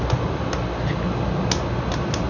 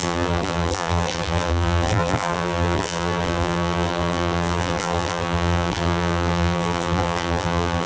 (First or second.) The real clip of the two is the first